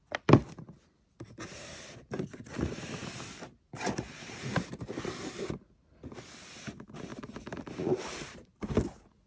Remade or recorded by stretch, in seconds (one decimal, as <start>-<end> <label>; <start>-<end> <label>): 0.0-9.3 recorded